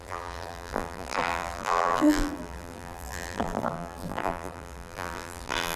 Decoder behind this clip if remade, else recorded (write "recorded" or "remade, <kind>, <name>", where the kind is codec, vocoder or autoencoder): remade, vocoder, BigVGAN v2